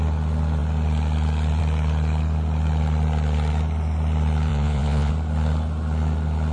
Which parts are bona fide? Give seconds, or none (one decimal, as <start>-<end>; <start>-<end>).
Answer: 0.0-4.5; 5.1-6.5